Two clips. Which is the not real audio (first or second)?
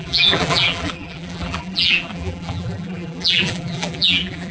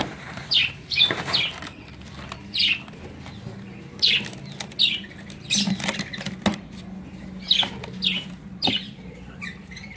first